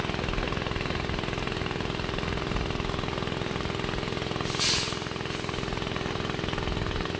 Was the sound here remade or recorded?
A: recorded